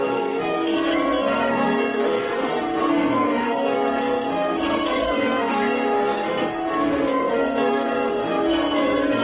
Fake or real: fake